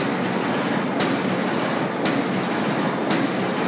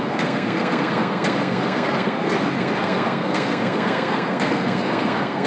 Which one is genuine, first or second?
first